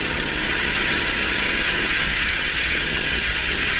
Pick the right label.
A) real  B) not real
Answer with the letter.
B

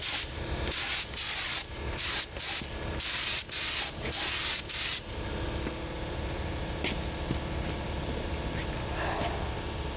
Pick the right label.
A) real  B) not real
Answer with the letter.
A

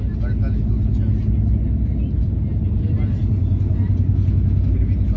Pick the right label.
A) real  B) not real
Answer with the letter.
A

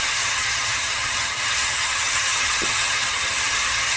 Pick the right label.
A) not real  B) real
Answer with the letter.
A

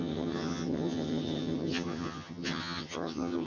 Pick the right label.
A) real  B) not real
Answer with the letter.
B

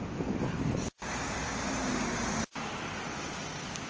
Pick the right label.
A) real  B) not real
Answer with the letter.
A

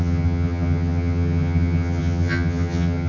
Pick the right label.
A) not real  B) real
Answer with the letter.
A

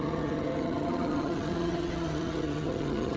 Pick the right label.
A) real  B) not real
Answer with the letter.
B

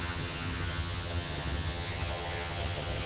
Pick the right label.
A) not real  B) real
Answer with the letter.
A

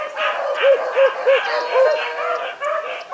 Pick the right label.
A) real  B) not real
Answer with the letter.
A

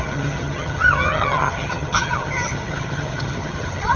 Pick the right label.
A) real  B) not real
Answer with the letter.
B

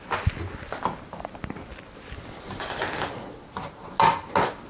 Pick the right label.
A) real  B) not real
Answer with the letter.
A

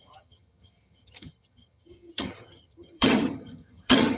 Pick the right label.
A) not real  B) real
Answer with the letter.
A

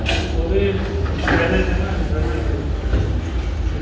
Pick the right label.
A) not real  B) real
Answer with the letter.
B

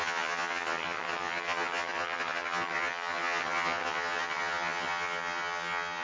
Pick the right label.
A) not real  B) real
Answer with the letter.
A